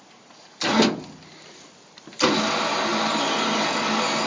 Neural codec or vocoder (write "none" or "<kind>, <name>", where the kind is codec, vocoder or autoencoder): none